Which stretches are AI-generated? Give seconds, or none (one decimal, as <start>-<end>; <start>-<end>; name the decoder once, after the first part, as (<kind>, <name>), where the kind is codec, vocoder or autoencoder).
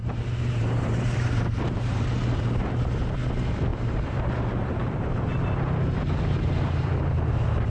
0.0-3.2 (vocoder, BigVGAN v2); 3.7-6.9